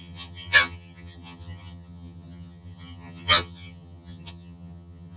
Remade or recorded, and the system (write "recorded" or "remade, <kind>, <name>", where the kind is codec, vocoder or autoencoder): remade, vocoder, HiFi-GAN